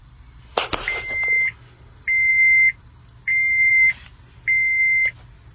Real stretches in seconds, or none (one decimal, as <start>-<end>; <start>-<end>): 0.0-3.3; 4.3-5.5